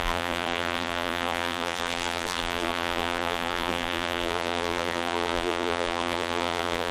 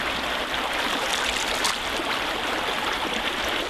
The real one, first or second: second